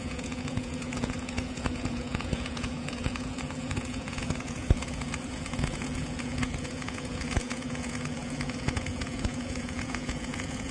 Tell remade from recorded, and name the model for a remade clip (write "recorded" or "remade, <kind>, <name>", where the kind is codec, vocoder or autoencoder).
remade, vocoder, Vocos